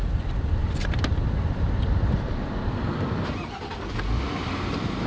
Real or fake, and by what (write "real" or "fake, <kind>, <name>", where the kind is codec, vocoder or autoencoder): real